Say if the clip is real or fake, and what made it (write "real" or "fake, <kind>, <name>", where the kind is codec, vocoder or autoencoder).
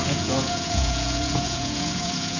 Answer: fake, vocoder, Vocos